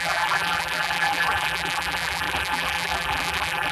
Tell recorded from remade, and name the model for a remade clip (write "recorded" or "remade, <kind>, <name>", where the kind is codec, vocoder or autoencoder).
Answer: remade, vocoder, BigVGAN v2